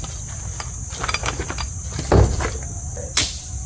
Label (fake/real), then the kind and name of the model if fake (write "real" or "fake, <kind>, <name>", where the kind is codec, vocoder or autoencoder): real